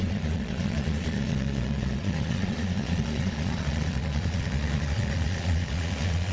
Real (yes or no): no